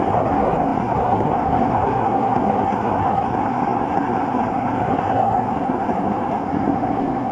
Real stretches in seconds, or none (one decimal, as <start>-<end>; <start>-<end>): none